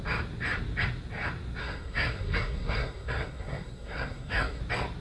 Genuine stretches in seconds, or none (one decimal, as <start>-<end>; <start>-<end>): 0.0-1.6; 4.6-5.0